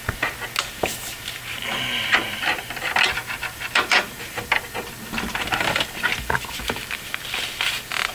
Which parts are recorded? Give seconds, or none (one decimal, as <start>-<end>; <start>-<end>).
0.0-2.3; 7.1-8.1